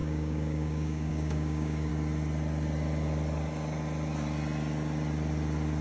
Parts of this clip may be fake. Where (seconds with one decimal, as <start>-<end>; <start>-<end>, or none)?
0.0-1.9